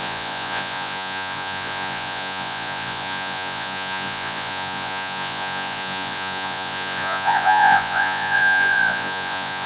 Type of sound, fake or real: fake